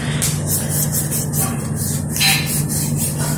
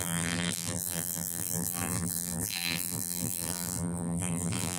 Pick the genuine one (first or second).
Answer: first